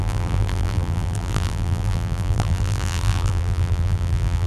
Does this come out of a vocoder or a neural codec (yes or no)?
yes